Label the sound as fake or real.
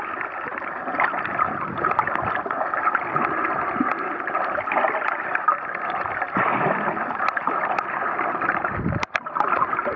real